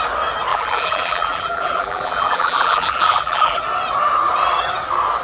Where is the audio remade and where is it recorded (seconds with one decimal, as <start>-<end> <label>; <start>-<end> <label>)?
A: 0.0-0.5 recorded; 0.5-3.6 remade; 3.6-5.2 recorded